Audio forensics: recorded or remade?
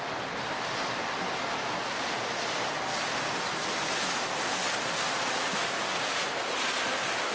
recorded